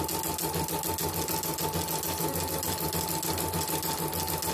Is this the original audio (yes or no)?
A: yes